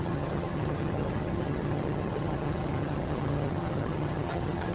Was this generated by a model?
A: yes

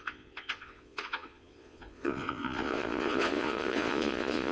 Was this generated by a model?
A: yes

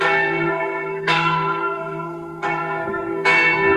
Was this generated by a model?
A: yes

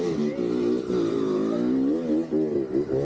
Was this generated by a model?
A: no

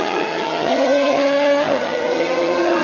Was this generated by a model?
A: yes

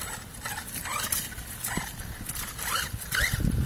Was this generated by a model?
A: no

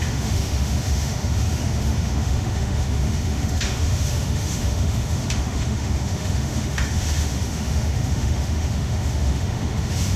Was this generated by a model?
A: yes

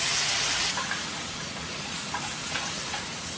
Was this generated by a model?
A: yes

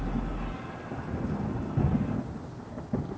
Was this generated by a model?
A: no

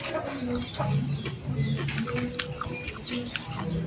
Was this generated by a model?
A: no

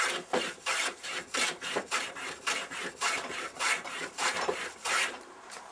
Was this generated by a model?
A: yes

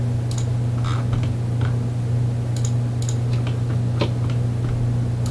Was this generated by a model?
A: no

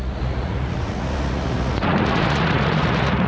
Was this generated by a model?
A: yes